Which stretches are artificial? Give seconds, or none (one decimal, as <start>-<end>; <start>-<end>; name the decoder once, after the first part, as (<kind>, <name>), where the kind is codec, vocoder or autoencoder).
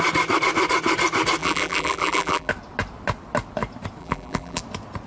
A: 1.4-2.5 (vocoder, BigVGAN v2); 4.0-4.6